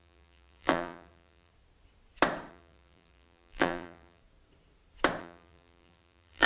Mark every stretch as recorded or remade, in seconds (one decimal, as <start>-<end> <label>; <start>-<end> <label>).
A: 0.0-1.5 remade; 1.5-2.5 recorded; 2.5-4.2 remade; 4.2-5.2 recorded; 5.2-6.5 remade